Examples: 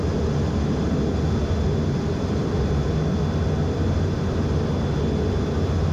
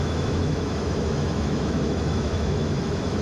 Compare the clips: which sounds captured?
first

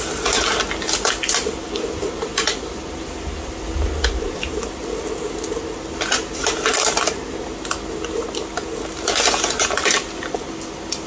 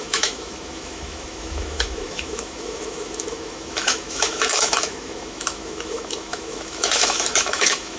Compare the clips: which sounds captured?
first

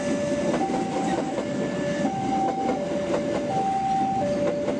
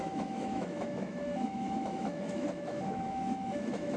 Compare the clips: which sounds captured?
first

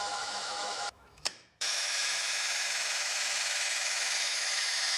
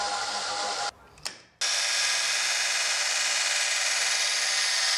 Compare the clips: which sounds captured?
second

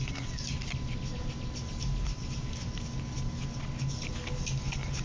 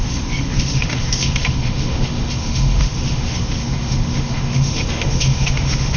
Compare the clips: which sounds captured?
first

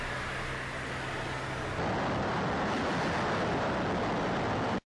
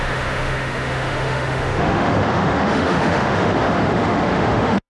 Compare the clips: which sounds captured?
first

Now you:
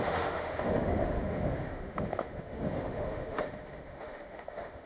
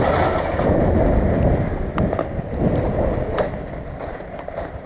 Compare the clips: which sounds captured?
second